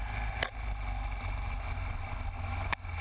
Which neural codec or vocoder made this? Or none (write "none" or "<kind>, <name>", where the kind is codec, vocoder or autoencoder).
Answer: none